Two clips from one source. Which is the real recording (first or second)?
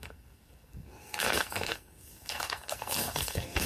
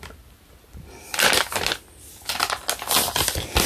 second